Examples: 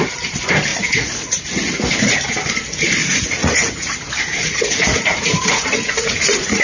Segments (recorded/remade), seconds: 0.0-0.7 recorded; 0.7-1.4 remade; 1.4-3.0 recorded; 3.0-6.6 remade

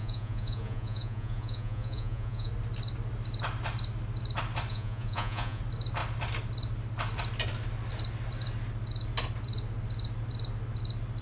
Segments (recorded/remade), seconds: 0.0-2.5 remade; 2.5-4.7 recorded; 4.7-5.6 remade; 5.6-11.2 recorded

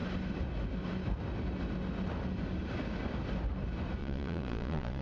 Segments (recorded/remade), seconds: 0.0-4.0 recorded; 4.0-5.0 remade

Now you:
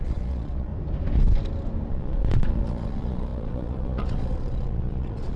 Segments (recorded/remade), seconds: 0.0-0.7 remade; 0.7-1.9 recorded; 1.9-5.4 remade